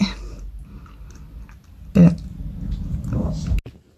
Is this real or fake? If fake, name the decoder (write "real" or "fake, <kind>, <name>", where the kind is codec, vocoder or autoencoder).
real